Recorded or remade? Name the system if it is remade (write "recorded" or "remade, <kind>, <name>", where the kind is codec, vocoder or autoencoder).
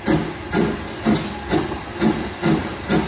recorded